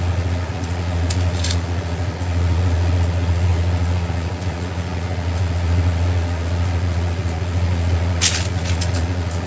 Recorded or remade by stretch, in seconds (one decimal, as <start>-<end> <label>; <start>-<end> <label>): 0.0-9.5 remade